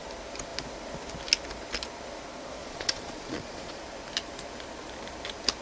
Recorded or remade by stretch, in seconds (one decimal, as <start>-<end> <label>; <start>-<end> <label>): 0.0-2.6 recorded; 2.6-3.8 remade; 3.8-5.6 recorded